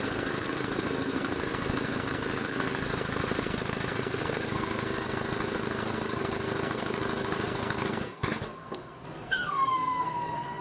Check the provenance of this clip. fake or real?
fake